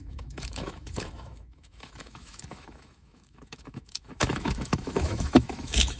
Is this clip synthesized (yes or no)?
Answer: yes